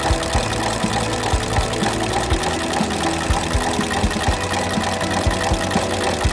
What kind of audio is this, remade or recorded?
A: recorded